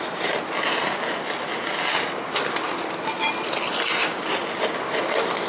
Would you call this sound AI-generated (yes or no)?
no